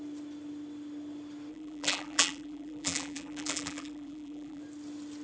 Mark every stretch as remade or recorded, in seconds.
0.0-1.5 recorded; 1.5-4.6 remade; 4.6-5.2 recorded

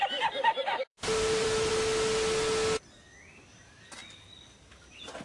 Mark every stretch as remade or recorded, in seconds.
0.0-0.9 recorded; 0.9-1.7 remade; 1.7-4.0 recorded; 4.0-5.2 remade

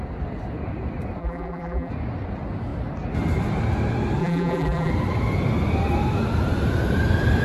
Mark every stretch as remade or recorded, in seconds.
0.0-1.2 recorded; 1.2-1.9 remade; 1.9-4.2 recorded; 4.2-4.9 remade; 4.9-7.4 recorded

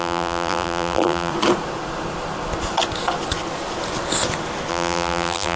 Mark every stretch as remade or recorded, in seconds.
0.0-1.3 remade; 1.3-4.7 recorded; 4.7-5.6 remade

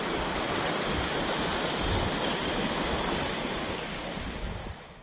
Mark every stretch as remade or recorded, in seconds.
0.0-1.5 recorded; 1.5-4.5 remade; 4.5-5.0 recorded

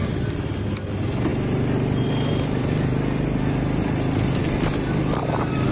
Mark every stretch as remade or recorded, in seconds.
0.0-5.7 recorded